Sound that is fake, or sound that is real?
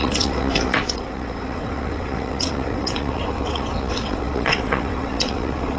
fake